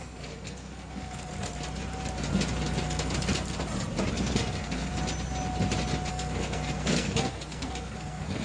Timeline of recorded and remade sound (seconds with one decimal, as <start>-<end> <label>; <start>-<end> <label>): 0.0-1.3 remade; 1.3-4.1 recorded; 4.1-4.9 remade; 4.9-6.1 recorded; 6.1-8.4 remade